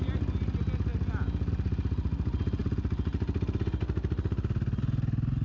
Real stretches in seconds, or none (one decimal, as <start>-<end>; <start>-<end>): 0.0-5.4